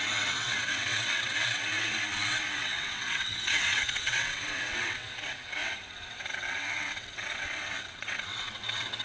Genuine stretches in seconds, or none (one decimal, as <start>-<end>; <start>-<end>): none